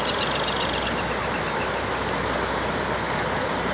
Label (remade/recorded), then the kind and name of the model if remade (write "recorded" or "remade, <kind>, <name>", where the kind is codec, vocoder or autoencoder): recorded